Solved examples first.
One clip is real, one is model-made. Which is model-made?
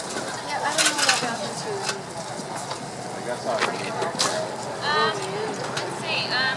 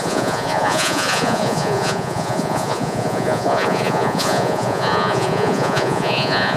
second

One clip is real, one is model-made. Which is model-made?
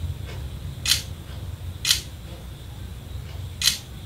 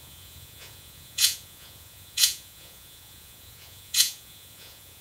second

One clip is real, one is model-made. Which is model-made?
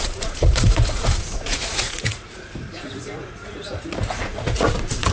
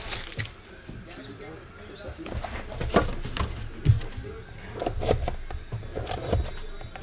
first